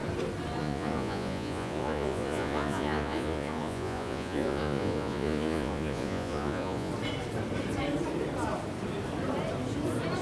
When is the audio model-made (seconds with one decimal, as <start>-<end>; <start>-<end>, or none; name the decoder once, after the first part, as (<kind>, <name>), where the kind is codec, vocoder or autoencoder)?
0.6-6.9 (vocoder, Vocos)